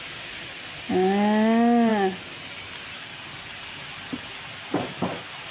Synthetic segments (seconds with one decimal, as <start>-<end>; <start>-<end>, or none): none